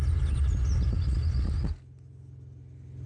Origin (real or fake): real